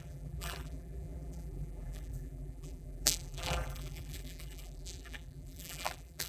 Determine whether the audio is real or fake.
fake